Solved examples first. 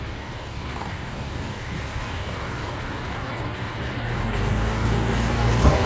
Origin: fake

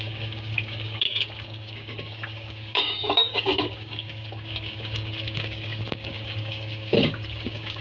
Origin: fake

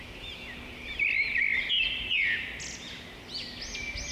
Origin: real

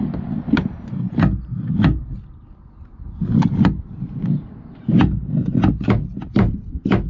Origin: real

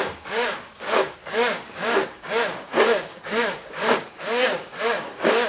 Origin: fake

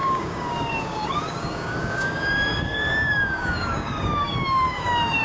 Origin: fake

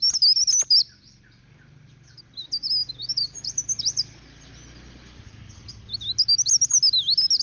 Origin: real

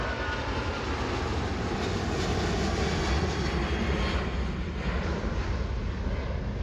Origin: real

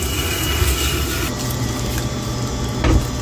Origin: real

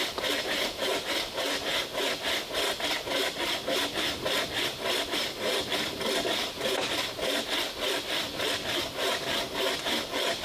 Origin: real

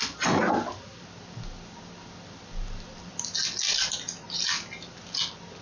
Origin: real